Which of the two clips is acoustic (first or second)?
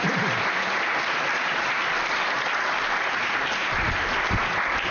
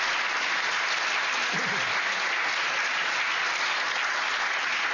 second